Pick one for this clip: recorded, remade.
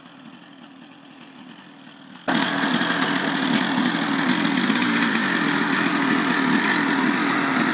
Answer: recorded